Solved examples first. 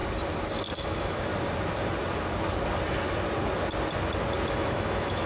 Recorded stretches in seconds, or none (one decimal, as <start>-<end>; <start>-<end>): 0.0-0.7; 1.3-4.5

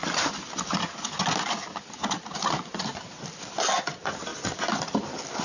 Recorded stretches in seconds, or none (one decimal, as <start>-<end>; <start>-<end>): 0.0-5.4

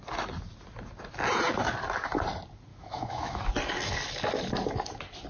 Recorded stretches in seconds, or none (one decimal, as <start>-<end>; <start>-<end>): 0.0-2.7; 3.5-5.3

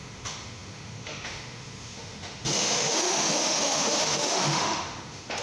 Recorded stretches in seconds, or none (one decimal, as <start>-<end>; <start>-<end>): none

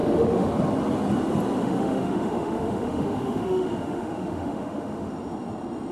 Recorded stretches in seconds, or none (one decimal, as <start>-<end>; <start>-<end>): 0.5-1.6; 5.1-5.9